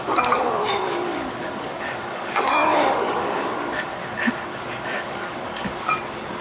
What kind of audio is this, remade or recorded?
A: remade